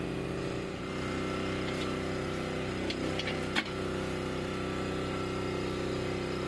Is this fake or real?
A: real